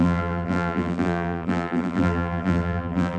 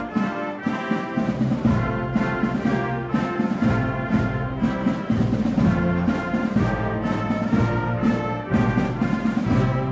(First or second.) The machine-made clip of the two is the first